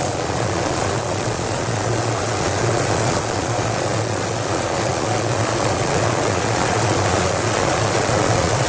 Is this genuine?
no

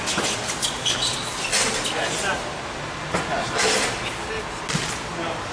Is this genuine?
yes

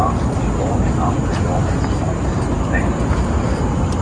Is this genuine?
yes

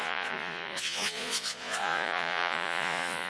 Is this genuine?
no